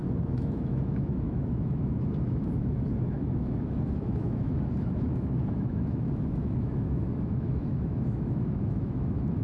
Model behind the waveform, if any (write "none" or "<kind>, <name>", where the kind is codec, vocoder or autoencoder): autoencoder, DAC-VAE